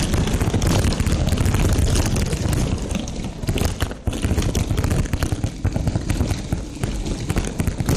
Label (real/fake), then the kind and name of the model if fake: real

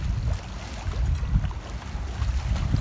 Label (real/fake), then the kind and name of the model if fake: real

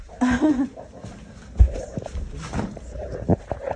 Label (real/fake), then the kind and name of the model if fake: fake, vocoder, BigVGAN v2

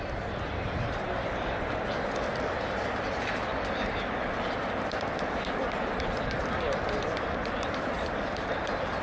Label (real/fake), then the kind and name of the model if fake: fake, vocoder, BigVGAN v2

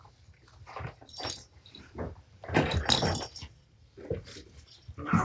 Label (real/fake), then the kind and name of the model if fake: fake, vocoder, BigVGAN v2